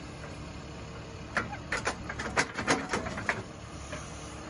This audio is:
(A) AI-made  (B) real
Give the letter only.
A